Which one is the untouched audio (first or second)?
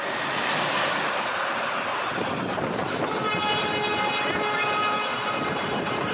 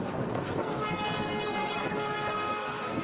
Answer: first